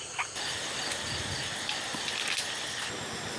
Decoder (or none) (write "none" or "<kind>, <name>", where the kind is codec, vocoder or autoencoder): none